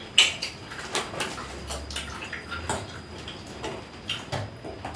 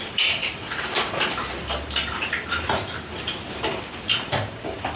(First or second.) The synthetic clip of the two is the second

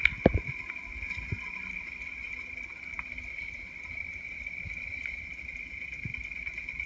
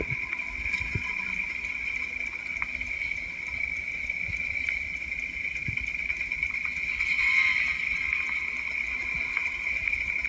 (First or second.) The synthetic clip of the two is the first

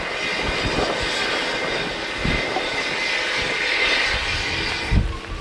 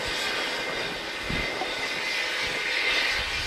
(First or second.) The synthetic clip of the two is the first